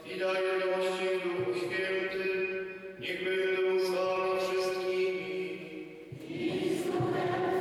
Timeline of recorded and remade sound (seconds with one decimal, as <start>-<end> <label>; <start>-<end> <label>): 0.0-7.6 remade